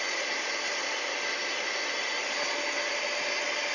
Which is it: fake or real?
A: real